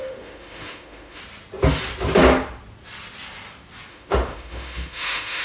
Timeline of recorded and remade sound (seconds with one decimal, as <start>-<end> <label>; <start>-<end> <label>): 0.0-1.2 remade; 1.2-3.9 recorded; 3.9-5.4 remade